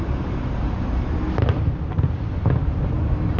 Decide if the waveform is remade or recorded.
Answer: recorded